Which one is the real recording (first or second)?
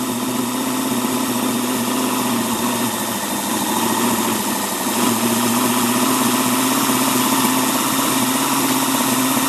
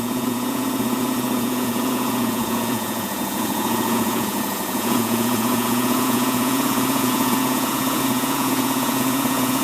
first